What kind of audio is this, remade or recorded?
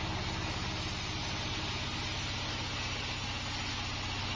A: recorded